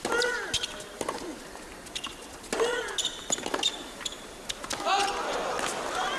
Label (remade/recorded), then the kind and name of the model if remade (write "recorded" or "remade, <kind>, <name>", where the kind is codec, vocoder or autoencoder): recorded